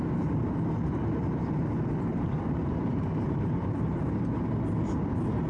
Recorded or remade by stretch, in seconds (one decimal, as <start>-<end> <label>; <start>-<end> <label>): 0.0-2.1 recorded; 2.1-4.4 remade; 4.4-5.5 recorded